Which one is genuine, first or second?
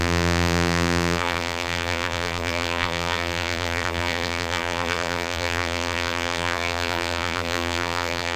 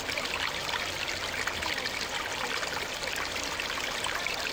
second